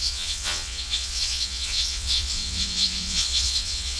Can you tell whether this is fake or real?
fake